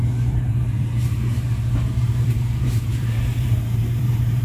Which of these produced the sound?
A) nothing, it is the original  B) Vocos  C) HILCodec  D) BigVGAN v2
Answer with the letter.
D